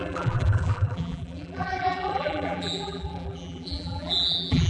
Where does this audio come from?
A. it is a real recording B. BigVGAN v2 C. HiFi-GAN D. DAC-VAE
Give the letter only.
B